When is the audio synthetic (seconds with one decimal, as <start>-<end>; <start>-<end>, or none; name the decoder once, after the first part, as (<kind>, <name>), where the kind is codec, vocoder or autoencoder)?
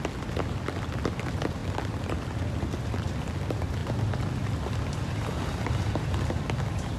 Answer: none